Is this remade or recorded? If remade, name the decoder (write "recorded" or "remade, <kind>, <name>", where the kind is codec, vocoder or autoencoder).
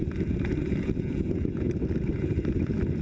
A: recorded